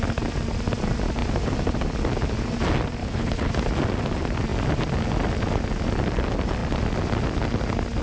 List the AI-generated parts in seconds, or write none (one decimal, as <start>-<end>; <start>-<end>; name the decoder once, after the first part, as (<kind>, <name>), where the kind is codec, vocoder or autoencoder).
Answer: 3.0-3.5 (codec, HILCodec)